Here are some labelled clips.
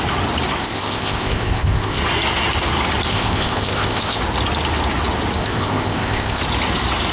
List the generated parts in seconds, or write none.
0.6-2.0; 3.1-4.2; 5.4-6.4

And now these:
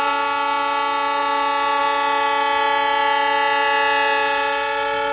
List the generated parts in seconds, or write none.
none

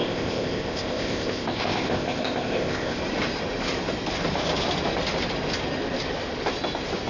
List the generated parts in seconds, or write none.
0.0-3.0

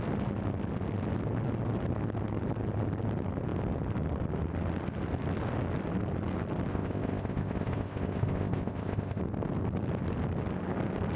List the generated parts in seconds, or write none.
6.7-9.2

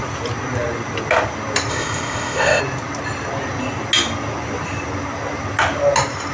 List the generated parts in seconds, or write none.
1.7-2.6